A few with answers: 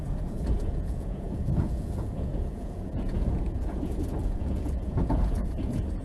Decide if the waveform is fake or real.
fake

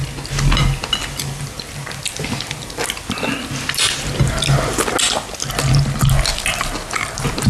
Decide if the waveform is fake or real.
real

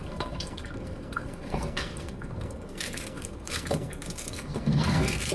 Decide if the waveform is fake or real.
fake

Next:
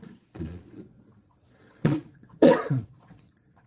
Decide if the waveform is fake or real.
fake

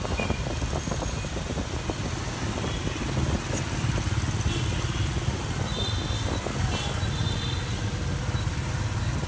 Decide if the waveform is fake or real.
real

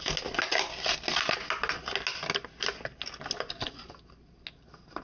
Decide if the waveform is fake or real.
real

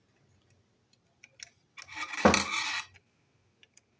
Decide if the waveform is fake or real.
real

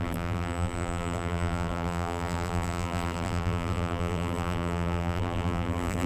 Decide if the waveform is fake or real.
fake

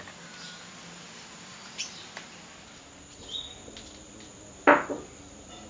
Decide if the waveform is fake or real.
real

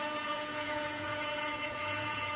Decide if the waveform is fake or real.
fake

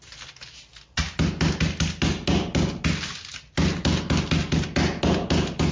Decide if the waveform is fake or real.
real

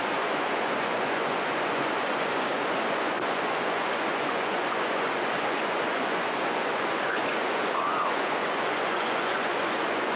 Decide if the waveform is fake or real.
fake